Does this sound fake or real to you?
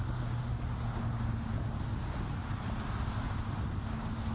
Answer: real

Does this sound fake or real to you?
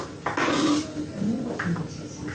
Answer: real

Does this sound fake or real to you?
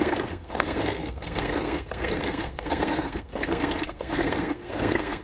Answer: fake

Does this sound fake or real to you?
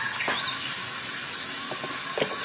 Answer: real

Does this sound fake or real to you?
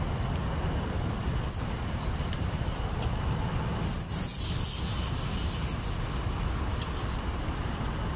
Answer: real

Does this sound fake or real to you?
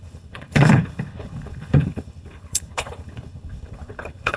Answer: fake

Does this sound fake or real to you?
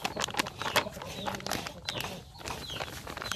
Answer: real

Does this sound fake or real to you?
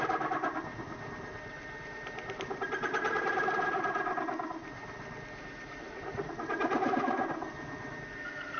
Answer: real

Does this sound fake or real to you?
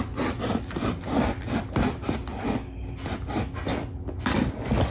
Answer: real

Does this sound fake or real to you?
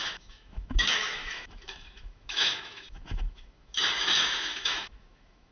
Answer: fake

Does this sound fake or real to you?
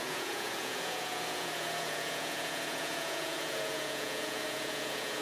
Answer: fake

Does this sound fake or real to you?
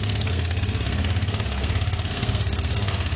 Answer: fake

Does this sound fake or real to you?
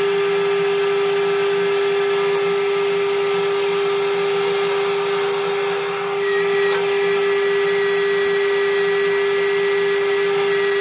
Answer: real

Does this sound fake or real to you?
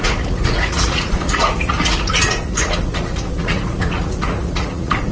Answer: fake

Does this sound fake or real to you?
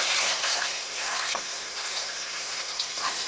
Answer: fake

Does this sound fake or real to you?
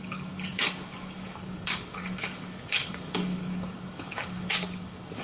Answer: fake